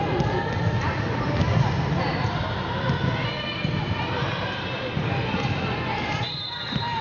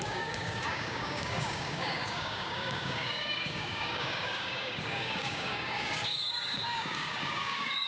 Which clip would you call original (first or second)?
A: first